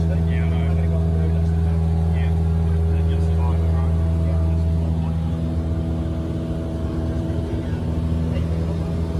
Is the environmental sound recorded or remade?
recorded